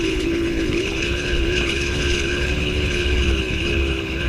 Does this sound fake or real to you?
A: fake